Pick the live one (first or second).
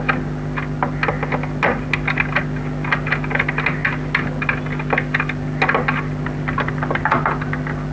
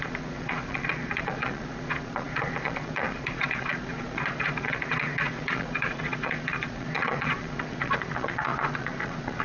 first